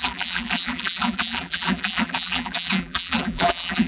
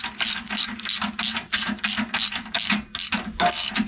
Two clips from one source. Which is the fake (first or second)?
first